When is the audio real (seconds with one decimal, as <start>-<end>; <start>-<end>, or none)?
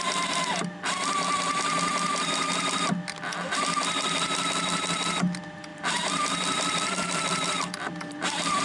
0.0-5.7